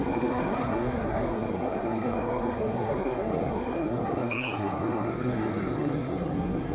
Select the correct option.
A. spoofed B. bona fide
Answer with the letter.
A